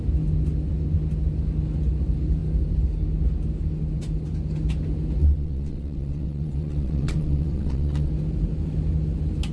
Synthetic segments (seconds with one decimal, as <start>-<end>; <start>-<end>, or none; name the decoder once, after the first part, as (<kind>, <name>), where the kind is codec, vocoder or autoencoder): 5.2-8.1 (vocoder, WaveNeXt)